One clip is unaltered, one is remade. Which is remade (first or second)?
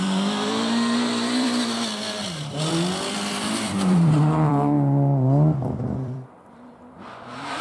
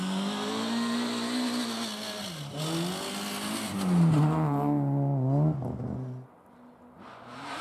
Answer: first